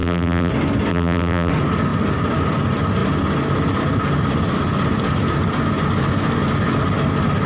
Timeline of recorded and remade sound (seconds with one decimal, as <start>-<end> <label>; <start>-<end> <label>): 0.0-0.5 remade; 0.5-0.9 recorded; 0.9-1.5 remade; 1.5-7.5 recorded

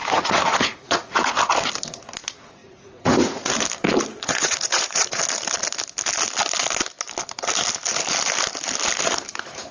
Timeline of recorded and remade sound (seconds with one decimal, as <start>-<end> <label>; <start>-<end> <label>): 0.0-1.4 remade; 1.4-2.6 recorded; 2.6-3.5 remade; 3.5-4.1 recorded; 4.1-5.2 remade; 5.2-9.7 recorded